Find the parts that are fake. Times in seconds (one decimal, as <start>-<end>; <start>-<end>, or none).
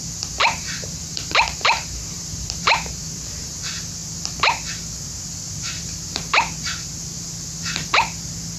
0.4-3.5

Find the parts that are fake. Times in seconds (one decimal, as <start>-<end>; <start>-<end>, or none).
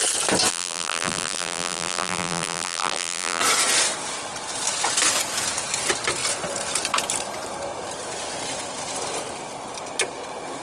0.5-3.4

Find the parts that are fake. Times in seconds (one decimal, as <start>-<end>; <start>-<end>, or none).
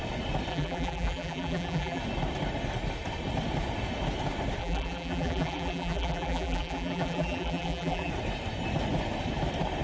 0.5-2.0; 4.6-8.1